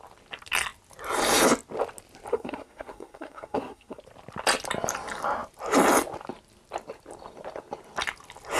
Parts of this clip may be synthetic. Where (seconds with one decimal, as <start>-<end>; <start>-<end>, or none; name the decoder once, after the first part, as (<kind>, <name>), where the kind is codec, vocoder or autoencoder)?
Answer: 2.3-4.0 (codec, SNAC)